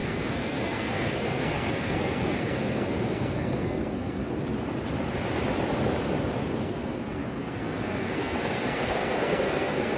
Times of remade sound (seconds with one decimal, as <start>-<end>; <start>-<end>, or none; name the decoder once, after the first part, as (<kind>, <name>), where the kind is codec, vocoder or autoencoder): 0.0-4.2 (codec, SNAC); 6.6-10.0